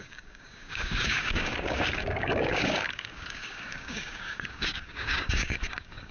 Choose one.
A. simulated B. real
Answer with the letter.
A